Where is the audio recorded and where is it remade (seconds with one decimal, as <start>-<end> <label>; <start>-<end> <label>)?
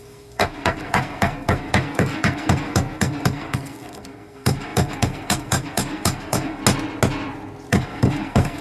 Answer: 0.0-6.6 remade; 6.6-7.7 recorded; 7.7-8.6 remade